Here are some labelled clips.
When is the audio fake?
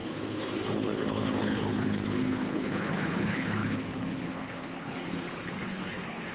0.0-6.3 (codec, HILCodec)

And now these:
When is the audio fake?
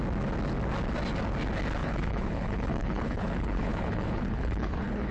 1.8-5.1 (codec, HILCodec)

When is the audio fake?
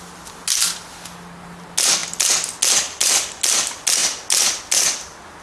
none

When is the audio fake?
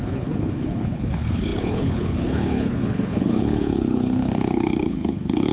0.0-5.5 (codec, HILCodec)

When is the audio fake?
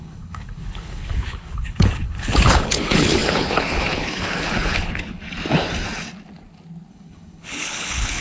0.0-5.2 (codec, HILCodec); 6.9-8.2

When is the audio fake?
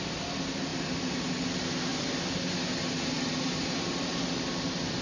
none